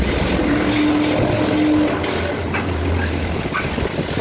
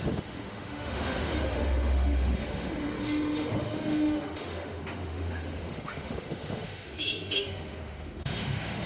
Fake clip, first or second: second